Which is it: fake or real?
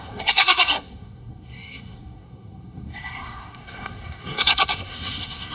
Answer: fake